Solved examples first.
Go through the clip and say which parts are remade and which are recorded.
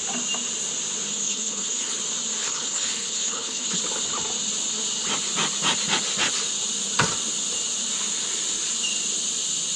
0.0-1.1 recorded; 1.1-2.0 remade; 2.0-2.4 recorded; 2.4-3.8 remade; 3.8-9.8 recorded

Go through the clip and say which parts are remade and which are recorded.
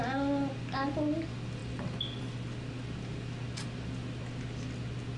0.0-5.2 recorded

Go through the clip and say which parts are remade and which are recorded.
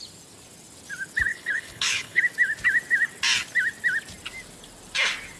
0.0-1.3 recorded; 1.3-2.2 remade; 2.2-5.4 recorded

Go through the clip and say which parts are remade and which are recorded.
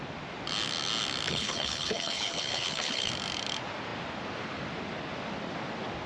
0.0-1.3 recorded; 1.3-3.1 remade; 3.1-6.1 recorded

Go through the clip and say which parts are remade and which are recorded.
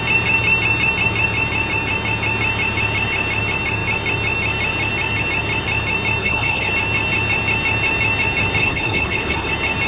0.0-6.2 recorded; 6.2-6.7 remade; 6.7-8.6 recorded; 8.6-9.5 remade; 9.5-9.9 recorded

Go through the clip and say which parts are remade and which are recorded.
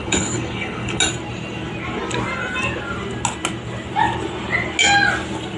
0.0-1.0 remade; 1.0-5.6 recorded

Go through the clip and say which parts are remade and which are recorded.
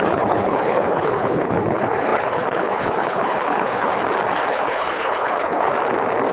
0.0-3.9 remade; 3.9-4.5 recorded; 4.5-5.7 remade; 5.7-6.3 recorded